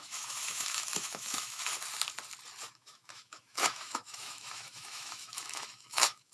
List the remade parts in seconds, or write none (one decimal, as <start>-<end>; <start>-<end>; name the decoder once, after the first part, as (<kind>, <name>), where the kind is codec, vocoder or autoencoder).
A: 0.0-1.7 (autoencoder, DAC-VAE); 2.7-6.3